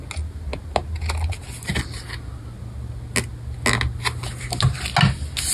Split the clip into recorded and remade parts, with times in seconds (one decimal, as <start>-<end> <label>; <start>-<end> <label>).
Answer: 0.0-5.5 recorded